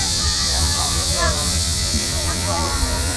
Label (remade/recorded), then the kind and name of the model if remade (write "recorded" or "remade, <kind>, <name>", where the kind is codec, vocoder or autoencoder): remade, vocoder, Vocos